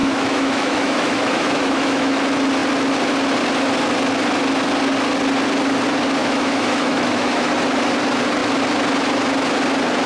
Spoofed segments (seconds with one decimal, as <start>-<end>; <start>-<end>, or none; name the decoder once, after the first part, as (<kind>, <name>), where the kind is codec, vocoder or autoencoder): 0.0-2.2 (autoencoder, DAC-VAE); 6.2-7.5